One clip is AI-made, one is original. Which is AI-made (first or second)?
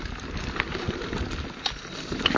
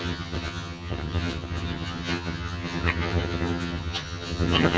second